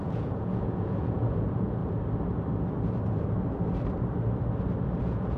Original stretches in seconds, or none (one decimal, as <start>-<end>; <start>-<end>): 1.8-5.0